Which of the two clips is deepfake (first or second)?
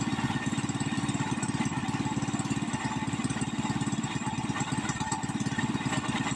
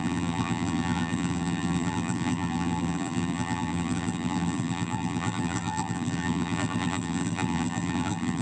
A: second